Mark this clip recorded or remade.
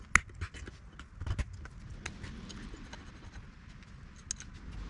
recorded